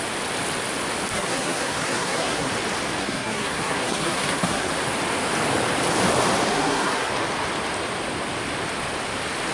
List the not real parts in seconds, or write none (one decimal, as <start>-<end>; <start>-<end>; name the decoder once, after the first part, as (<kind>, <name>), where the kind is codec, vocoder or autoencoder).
1.1-2.5 (codec, SNAC); 3.0-4.7; 6.5-7.1